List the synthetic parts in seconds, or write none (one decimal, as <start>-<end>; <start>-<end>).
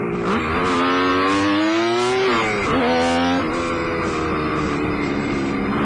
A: 4.5-5.3